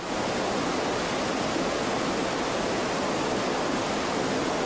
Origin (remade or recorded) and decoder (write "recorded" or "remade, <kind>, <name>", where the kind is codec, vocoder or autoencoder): recorded